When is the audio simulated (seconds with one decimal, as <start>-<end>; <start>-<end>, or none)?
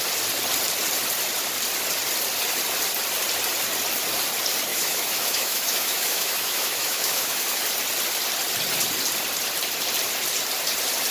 4.7-7.6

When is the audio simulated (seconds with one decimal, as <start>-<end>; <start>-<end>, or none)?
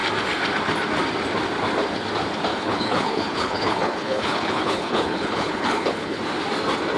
2.5-6.2